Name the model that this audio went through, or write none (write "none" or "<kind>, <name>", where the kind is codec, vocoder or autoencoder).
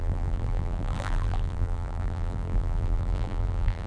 vocoder, BigVGAN v2